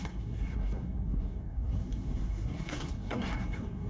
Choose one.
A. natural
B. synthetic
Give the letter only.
B